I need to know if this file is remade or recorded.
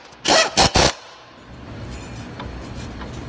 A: recorded